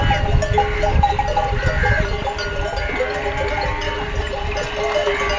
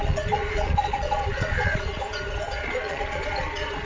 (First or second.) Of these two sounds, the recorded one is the first